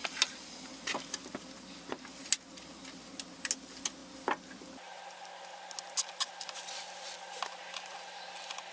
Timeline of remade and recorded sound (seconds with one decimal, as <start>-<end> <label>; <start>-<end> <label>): 0.0-8.7 recorded